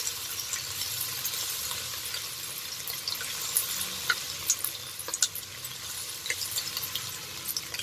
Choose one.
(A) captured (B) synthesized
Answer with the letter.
A